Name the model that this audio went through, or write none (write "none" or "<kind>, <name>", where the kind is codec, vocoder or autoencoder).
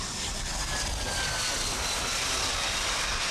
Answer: none